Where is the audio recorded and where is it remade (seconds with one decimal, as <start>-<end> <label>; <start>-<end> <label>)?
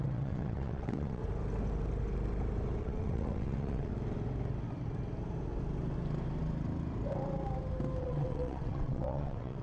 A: 0.0-1.2 remade; 1.2-2.8 recorded; 2.8-3.9 remade; 3.9-8.0 recorded; 8.0-9.6 remade